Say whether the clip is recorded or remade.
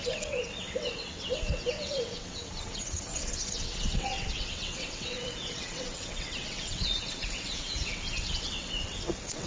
remade